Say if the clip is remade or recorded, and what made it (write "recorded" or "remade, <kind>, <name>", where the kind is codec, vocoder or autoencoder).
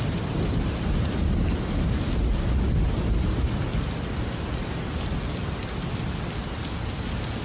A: recorded